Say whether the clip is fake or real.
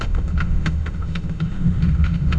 fake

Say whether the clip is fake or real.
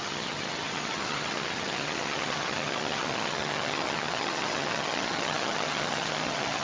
fake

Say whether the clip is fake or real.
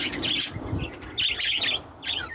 real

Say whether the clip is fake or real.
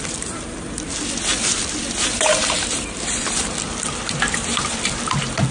fake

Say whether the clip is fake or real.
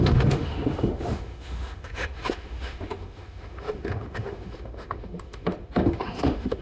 fake